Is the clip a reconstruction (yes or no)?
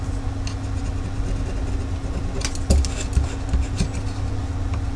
no